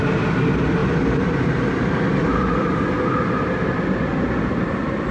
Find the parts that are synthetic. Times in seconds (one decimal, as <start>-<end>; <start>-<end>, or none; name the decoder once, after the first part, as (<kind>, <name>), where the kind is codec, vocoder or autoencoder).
none